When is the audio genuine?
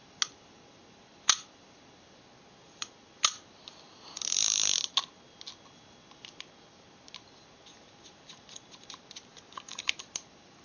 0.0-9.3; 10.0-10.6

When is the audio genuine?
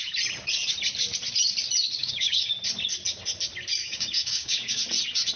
0.0-2.0; 2.5-3.8; 4.8-5.4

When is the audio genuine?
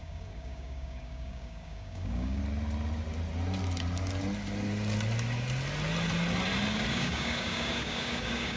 2.4-6.9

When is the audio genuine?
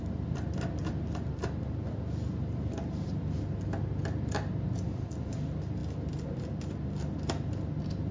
0.0-8.1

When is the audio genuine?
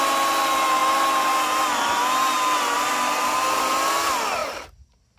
0.0-5.2